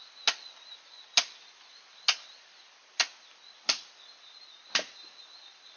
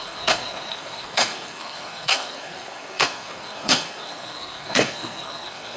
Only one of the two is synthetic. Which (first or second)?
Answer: second